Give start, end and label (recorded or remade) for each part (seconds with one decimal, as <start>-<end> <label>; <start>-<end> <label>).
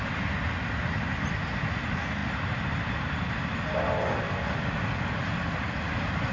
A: 0.0-6.3 recorded